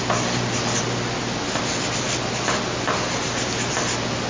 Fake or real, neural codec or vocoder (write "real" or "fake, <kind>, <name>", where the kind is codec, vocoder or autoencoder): real